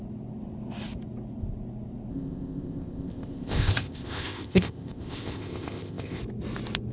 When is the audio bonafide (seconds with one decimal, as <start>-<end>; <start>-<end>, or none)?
0.0-2.1; 6.2-6.9